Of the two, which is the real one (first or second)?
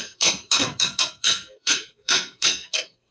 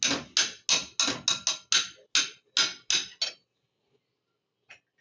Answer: second